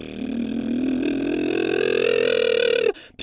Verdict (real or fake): real